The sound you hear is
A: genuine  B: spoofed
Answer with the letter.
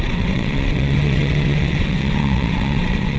B